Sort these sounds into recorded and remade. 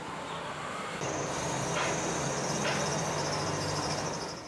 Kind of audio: recorded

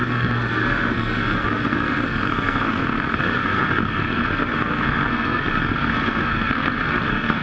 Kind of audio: remade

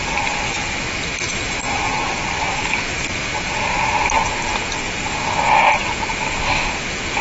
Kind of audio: remade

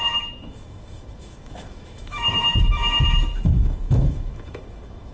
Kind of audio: remade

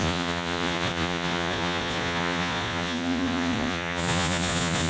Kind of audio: remade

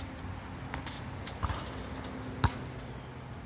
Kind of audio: recorded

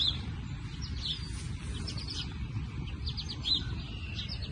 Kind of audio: recorded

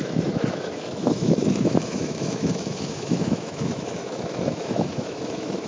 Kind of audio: remade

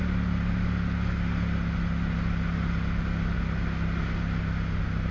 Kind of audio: recorded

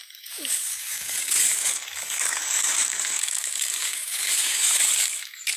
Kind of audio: remade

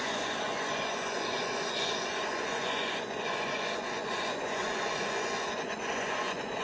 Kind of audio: remade